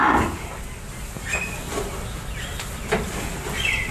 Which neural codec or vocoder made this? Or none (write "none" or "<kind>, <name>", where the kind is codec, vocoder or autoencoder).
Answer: none